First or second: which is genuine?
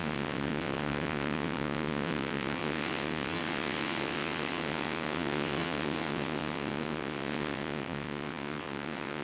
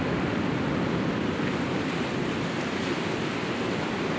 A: second